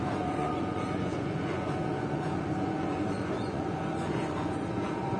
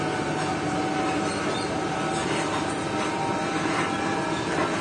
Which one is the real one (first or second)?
second